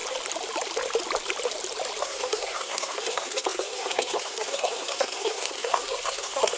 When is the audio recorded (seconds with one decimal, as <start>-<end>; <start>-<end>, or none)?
0.0-2.0